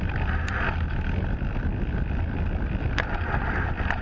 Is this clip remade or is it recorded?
recorded